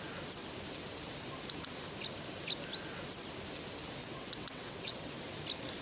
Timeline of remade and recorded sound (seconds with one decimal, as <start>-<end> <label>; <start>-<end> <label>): 0.0-4.0 recorded; 4.0-5.1 remade; 5.1-5.8 recorded